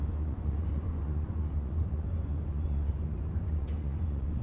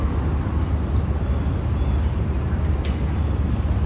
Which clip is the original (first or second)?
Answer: second